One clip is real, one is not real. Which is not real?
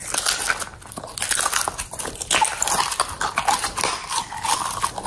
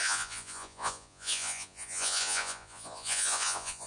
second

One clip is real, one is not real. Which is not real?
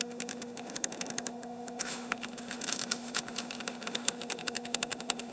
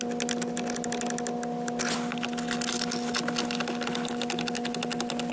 first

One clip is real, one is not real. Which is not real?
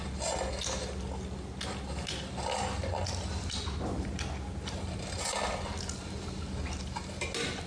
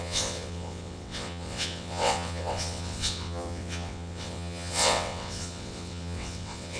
second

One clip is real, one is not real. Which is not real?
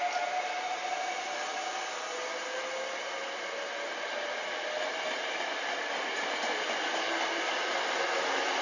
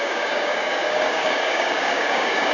second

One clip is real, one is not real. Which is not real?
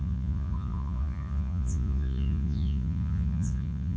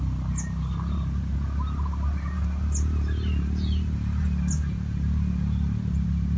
first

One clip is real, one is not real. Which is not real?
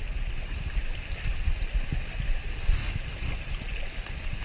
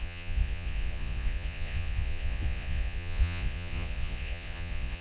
second